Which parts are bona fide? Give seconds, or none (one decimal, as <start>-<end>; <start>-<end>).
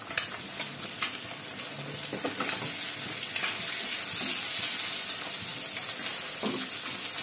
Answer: 0.0-7.2